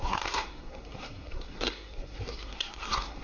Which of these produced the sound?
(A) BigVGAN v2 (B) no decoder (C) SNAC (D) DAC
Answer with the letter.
C